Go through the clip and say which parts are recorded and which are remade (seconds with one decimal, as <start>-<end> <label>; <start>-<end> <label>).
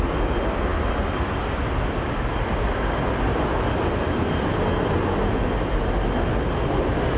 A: 0.0-7.2 recorded